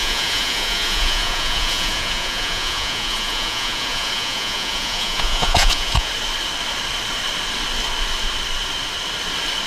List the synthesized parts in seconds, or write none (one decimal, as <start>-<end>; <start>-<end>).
0.0-6.1